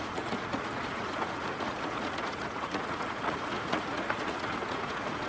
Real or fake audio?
fake